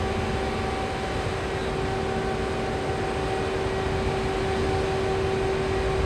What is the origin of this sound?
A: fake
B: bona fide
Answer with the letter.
B